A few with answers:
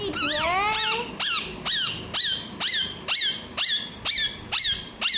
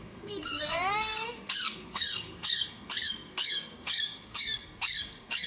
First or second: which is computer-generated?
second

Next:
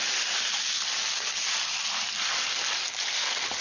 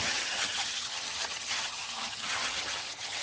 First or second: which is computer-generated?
second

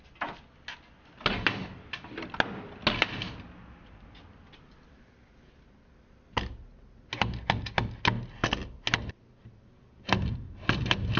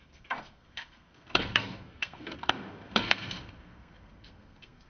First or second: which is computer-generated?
second